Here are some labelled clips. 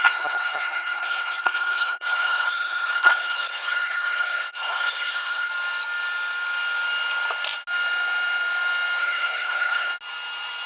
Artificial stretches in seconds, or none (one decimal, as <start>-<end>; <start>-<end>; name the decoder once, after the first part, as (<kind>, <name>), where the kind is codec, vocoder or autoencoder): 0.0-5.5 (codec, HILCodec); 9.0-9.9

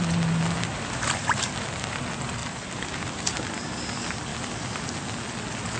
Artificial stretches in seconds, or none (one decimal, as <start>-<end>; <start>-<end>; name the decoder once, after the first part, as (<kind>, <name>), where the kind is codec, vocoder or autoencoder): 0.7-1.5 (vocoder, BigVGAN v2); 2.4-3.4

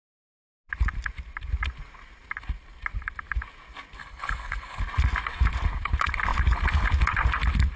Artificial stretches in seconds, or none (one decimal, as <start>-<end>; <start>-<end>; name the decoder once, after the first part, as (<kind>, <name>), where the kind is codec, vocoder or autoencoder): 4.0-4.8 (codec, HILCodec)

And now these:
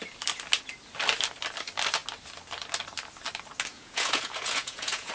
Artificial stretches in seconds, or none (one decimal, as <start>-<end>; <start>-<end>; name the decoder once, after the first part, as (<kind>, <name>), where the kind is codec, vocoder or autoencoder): 3.7-5.1 (vocoder, Vocos)

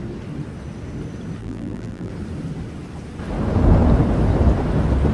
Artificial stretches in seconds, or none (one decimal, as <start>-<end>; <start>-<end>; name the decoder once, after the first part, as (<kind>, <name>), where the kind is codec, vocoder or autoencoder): 1.4-2.1 (vocoder, BigVGAN v2)

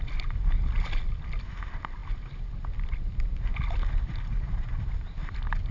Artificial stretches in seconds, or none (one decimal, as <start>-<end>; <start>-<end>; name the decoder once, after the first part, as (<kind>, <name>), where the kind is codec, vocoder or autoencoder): none

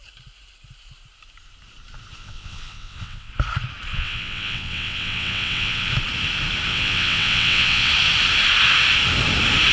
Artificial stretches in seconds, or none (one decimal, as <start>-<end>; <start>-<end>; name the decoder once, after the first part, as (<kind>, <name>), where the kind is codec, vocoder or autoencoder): 2.2-3.3 (vocoder, WaveNeXt); 3.9-5.9; 6.7-7.9

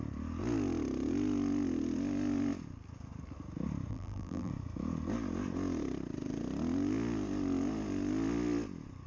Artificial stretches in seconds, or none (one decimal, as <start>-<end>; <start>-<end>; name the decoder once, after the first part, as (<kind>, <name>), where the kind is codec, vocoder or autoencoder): 3.9-4.5 (vocoder, BigVGAN v2)